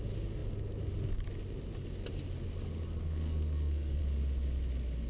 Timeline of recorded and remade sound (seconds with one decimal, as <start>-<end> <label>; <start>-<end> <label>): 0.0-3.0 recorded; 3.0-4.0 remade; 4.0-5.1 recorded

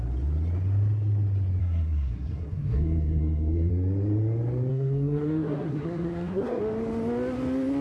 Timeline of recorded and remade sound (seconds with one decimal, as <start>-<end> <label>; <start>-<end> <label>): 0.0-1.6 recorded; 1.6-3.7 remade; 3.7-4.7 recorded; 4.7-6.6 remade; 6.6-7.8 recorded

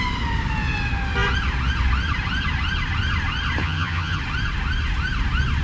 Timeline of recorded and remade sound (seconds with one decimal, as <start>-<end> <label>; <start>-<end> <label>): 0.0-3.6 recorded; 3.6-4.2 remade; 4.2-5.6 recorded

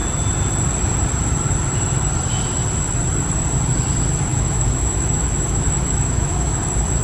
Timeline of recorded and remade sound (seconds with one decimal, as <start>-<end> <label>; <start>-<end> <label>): 0.0-4.3 recorded; 4.3-7.0 remade

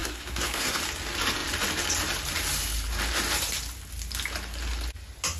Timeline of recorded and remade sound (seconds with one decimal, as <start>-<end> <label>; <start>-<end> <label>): 0.0-0.8 remade; 0.8-5.4 recorded

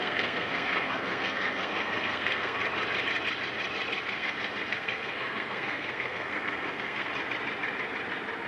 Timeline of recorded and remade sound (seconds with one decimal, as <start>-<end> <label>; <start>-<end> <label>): 0.0-2.6 remade; 2.6-4.1 recorded; 4.1-7.1 remade; 7.1-8.5 recorded

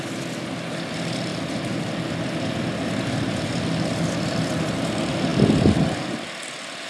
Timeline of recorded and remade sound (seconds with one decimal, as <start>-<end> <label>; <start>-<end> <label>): 0.0-6.9 recorded